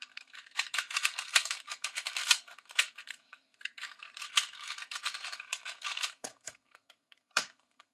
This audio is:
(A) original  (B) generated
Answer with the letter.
B